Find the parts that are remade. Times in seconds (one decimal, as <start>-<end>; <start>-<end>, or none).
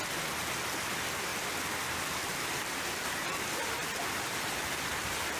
1.3-4.5